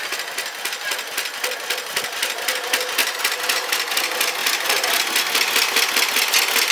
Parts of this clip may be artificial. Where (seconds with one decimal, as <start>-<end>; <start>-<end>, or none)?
none